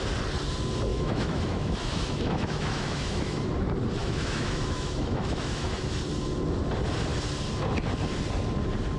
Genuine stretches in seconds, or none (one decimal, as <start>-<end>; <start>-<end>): 0.0-0.9; 3.4-4.0; 6.0-9.0